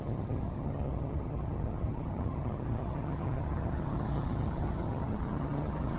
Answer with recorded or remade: remade